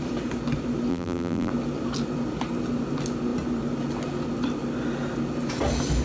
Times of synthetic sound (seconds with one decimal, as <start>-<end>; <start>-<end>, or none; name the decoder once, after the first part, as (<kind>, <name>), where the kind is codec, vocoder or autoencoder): 0.9-1.5 (vocoder, BigVGAN v2)

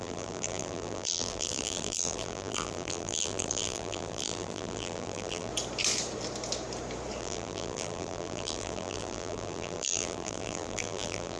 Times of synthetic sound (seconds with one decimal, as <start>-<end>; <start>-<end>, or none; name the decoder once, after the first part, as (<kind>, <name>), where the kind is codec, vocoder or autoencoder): 0.0-5.5 (vocoder, BigVGAN v2); 7.2-11.4

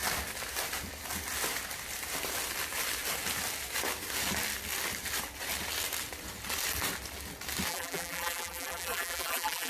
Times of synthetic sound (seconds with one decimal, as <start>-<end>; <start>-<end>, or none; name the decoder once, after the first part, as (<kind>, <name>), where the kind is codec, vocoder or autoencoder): 7.7-9.7 (vocoder, BigVGAN v2)

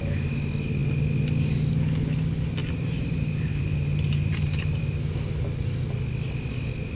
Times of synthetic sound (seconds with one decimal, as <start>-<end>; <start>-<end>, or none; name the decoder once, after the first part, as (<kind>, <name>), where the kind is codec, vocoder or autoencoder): 2.6-4.8 (vocoder, BigVGAN v2)

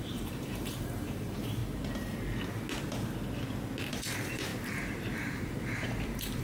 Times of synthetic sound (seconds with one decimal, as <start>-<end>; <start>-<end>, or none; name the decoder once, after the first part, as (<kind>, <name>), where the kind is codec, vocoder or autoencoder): 0.0-1.6 (vocoder, BigVGAN v2); 3.9-4.5; 5.1-6.4

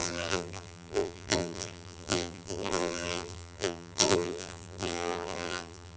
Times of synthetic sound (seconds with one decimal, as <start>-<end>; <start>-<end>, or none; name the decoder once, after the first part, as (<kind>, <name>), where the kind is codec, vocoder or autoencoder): 0.0-6.0 (vocoder, BigVGAN v2)

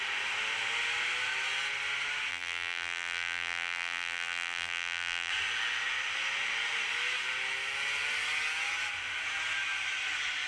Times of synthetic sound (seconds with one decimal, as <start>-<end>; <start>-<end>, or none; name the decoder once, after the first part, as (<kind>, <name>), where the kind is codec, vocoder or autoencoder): 2.3-5.3 (vocoder, BigVGAN v2)

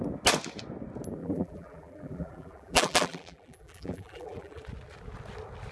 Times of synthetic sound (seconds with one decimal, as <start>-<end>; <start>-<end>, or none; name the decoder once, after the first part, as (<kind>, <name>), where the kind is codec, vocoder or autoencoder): 1.2-4.6 (vocoder, BigVGAN v2)